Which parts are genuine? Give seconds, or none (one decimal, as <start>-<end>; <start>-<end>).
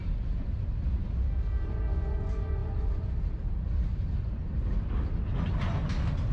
0.0-6.3